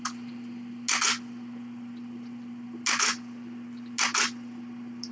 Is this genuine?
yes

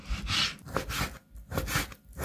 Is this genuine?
yes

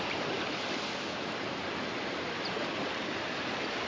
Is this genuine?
yes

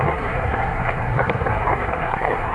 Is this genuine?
no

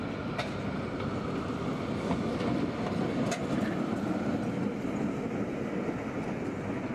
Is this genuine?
yes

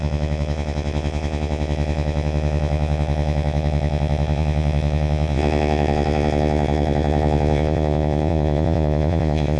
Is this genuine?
no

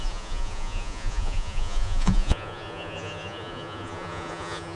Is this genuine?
no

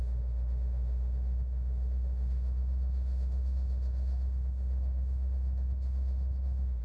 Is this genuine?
no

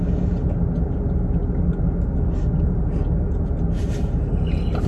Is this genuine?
yes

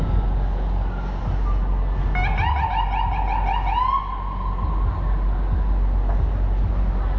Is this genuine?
yes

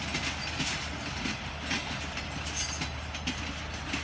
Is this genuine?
yes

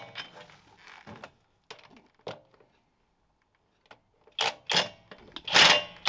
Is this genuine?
yes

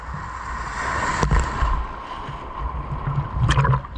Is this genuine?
yes